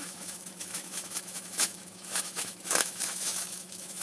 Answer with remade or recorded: remade